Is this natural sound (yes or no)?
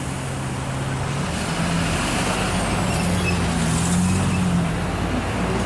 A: yes